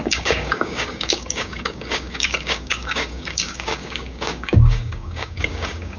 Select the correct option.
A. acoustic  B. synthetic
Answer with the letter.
B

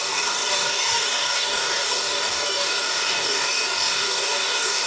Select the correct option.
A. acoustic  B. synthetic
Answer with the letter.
B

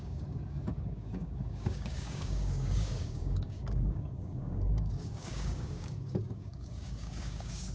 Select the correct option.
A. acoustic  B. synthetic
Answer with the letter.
B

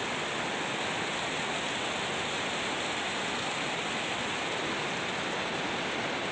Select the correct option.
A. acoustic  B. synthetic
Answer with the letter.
A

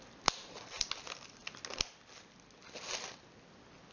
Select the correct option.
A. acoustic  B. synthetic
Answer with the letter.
A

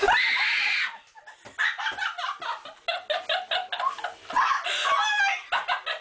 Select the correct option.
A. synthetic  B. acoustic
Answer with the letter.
B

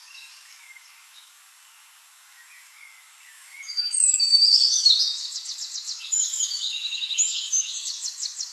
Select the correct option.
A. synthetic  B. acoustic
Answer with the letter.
A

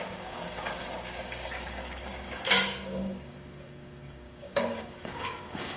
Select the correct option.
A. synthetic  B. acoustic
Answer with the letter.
A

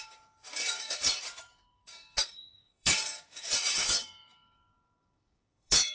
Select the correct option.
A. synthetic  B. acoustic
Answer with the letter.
A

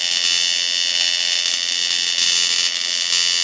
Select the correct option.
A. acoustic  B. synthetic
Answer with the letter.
A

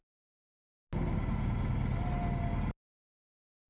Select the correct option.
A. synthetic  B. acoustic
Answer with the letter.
B